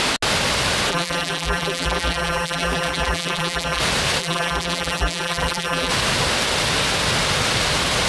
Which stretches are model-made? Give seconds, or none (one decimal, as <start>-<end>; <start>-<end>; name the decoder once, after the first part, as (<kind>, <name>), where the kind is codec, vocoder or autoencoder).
0.9-3.8 (vocoder, BigVGAN v2); 4.2-5.9